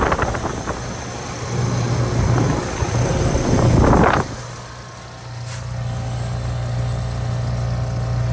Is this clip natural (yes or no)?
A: yes